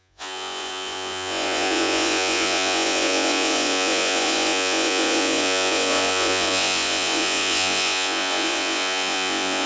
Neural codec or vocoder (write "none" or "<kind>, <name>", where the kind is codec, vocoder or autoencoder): vocoder, Vocos